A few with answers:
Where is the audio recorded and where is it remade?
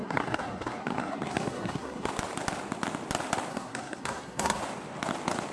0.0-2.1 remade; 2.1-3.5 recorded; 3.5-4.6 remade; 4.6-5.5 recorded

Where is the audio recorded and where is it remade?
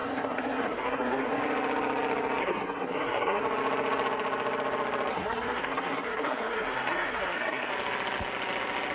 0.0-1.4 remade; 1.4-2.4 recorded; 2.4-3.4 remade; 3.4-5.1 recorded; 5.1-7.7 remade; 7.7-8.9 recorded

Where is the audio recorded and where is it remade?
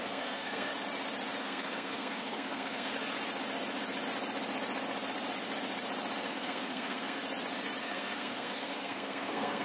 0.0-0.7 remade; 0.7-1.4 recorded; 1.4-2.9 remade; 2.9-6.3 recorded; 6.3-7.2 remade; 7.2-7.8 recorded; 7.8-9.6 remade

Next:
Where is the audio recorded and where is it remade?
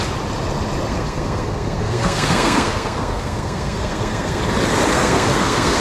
0.0-0.9 recorded; 0.9-4.4 remade; 4.4-4.9 recorded; 4.9-5.8 remade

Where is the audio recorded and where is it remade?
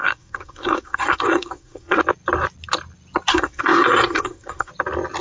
0.0-2.0 remade; 2.0-3.3 recorded; 3.3-4.7 remade; 4.7-5.2 recorded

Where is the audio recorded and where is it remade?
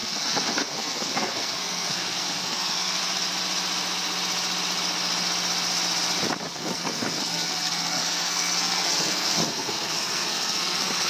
0.0-3.0 remade; 3.0-6.5 recorded; 6.5-11.1 remade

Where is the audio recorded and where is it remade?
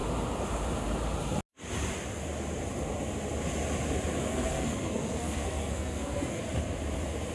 0.0-4.2 recorded; 4.2-6.4 remade; 6.4-7.3 recorded